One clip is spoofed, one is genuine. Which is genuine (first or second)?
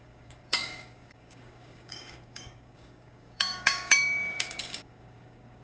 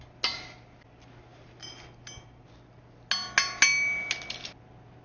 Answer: second